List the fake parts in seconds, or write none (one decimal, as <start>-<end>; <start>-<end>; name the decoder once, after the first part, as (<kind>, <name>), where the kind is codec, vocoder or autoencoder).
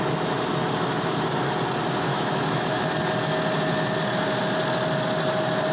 2.1-2.9 (autoencoder, DAC-VAE)